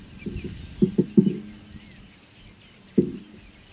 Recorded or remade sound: recorded